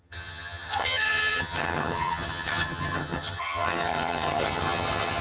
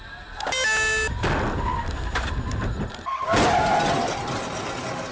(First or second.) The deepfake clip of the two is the first